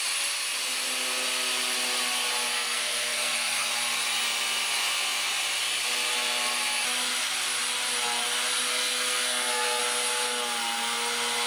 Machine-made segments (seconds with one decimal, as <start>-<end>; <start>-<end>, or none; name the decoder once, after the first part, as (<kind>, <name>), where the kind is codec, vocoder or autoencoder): 2.5-3.7 (codec, SNAC); 8.7-9.8